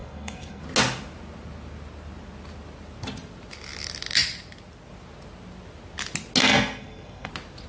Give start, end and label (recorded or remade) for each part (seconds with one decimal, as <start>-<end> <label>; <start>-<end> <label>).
0.0-0.6 remade; 0.6-6.4 recorded; 6.4-7.3 remade; 7.3-7.7 recorded